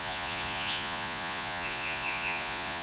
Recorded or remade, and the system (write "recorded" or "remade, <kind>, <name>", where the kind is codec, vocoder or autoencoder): remade, vocoder, Vocos